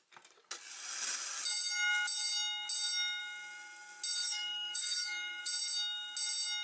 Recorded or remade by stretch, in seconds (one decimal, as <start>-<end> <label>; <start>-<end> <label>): 0.0-4.2 recorded; 4.2-5.4 remade; 5.4-6.6 recorded

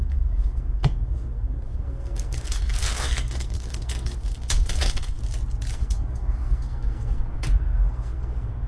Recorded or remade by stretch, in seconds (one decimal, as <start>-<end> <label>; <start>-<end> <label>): 0.0-5.2 remade; 5.2-5.7 recorded; 5.7-8.7 remade

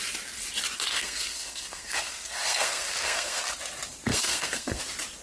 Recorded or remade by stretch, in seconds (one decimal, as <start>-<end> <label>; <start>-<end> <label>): 0.0-0.9 recorded; 0.9-3.5 remade; 3.5-4.1 recorded; 4.1-4.8 remade; 4.8-5.2 recorded

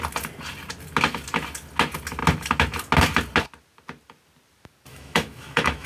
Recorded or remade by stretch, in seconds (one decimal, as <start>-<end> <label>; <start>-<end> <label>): 0.0-4.9 recorded; 4.9-5.9 remade

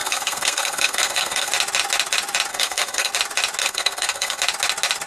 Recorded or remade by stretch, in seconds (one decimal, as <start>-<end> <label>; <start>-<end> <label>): 0.0-1.5 remade; 1.5-2.5 recorded; 2.5-3.1 remade; 3.1-3.6 recorded; 3.6-4.4 remade; 4.4-5.1 recorded

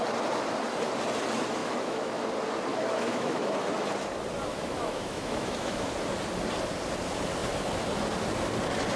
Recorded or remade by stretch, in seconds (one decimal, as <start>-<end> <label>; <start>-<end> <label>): 0.0-1.6 recorded; 1.6-2.2 remade; 2.2-2.7 recorded; 2.7-3.5 remade; 3.5-4.5 recorded; 4.5-5.9 remade; 5.9-9.0 recorded